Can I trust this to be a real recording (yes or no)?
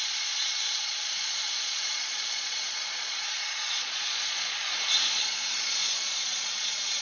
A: no